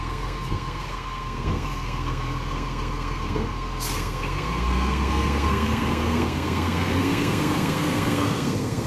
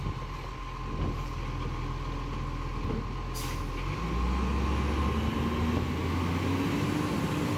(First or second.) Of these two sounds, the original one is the second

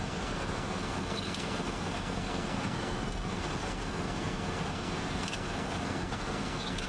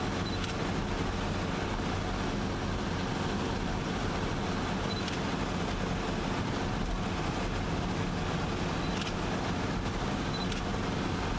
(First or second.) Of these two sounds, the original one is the second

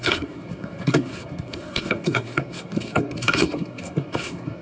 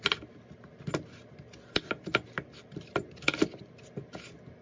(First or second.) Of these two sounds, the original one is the second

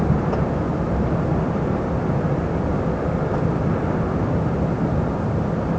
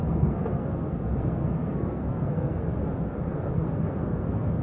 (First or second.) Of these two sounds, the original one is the first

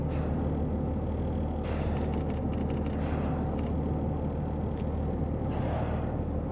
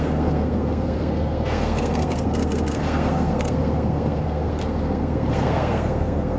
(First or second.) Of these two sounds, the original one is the first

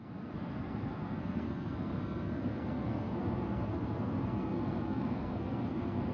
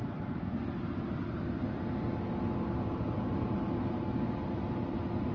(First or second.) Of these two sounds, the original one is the second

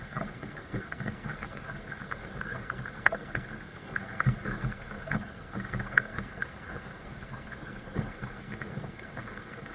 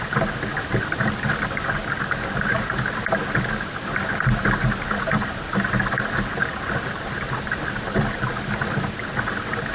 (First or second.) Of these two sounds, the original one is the second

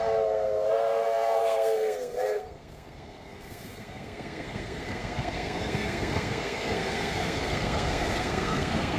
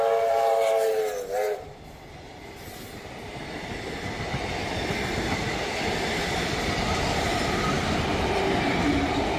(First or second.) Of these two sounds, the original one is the second